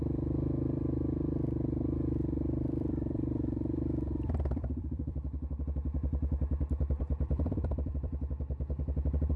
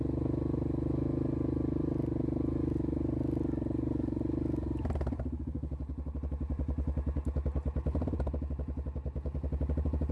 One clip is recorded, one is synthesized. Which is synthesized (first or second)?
first